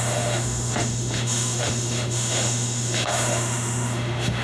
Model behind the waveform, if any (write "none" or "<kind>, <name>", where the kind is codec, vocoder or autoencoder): autoencoder, DAC-VAE